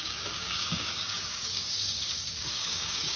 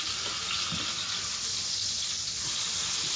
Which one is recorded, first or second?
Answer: second